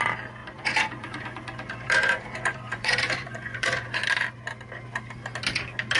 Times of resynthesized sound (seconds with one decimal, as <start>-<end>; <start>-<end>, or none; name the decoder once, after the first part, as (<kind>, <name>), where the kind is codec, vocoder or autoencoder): 0.4-4.0 (vocoder, Vocos)